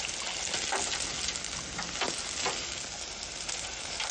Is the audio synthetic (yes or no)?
no